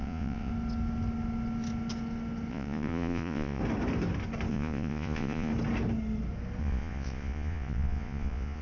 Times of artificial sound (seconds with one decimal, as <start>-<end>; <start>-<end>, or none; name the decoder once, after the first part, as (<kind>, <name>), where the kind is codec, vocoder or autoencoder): 0.0-0.5 (vocoder, Vocos); 2.5-3.6; 4.5-5.5; 6.6-8.6

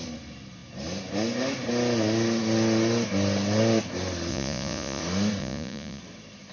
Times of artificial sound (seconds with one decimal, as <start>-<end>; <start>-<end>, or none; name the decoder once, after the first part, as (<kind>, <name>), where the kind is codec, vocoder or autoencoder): 4.3-5.0 (vocoder, Vocos); 5.4-6.0

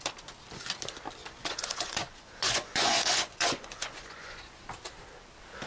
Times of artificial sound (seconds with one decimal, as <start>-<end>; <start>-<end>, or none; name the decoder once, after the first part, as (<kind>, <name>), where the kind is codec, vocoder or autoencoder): 1.2-4.6 (vocoder, Vocos)

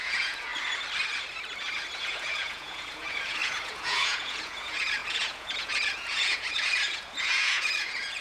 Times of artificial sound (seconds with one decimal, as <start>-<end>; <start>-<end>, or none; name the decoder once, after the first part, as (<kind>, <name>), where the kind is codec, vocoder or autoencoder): 0.0-0.5 (vocoder, Vocos); 2.0-8.2

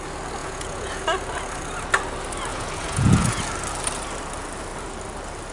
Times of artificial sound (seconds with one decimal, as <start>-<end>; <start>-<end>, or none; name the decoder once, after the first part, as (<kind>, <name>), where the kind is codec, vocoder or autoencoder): 0.4-1.0 (vocoder, Vocos); 2.5-3.4

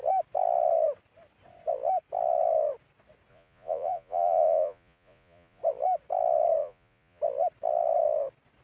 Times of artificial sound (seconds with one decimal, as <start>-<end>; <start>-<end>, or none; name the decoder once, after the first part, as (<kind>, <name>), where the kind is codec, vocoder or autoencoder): 3.3-5.6 (vocoder, Vocos); 6.6-7.2